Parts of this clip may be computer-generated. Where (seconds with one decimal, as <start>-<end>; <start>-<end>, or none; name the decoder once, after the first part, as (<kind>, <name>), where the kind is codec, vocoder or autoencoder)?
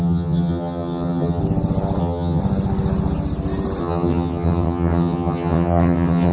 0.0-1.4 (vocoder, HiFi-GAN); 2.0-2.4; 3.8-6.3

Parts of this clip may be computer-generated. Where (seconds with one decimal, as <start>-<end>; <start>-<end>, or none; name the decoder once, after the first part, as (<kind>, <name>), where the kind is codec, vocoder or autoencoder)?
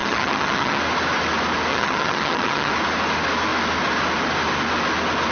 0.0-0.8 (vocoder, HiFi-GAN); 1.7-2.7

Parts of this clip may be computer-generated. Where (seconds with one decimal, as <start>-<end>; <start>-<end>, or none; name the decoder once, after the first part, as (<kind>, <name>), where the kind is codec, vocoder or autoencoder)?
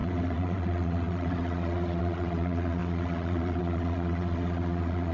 0.0-5.1 (vocoder, Vocos)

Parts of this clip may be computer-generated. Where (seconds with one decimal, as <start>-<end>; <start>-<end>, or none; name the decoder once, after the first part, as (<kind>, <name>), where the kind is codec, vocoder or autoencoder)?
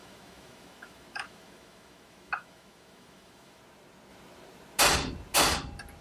0.0-3.6 (autoencoder, DAC-VAE)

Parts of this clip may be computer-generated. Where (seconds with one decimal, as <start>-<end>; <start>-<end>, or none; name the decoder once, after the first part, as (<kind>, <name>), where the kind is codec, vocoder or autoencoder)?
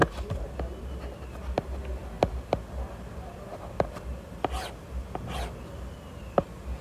none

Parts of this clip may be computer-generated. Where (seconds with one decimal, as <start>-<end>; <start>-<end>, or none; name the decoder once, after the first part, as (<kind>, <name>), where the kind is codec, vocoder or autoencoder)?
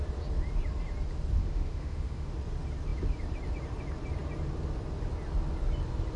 1.4-2.3 (autoencoder, DAC-VAE)